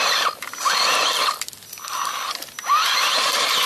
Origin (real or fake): real